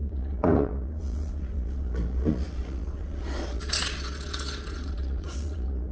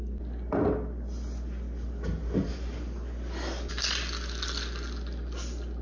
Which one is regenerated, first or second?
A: first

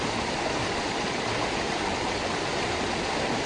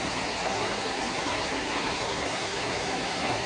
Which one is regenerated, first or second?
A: second